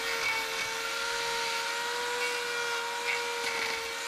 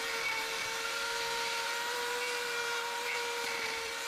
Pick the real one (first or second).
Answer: first